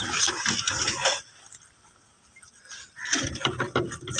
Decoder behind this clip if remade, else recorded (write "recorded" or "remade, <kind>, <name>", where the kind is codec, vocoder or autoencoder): recorded